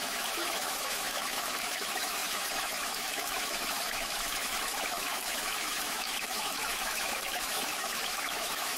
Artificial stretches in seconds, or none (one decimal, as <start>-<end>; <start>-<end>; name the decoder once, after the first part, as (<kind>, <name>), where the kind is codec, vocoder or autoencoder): 0.0-8.8 (autoencoder, DAC-VAE)